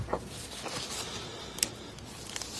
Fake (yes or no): no